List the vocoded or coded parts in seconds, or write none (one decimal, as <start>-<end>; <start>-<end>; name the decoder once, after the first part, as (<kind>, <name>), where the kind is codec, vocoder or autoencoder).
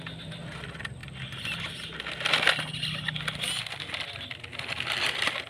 none